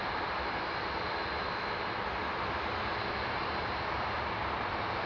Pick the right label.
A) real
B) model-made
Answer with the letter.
A